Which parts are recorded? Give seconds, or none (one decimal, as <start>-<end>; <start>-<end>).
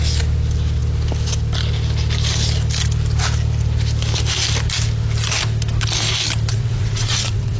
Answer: 0.0-6.5